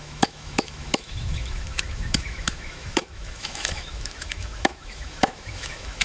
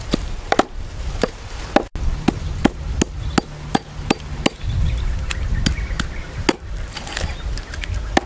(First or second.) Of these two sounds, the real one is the second